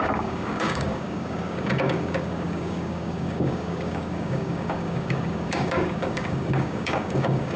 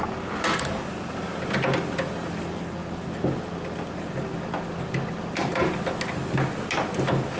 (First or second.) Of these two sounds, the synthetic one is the first